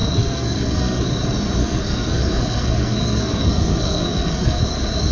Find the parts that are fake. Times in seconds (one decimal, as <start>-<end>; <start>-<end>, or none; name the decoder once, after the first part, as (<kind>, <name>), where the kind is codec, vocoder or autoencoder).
0.0-1.1 (codec, SNAC); 1.6-4.6